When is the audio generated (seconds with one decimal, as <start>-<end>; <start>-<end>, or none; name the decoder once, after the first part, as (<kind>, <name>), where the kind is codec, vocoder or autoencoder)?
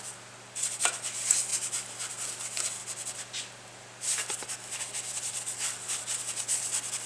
none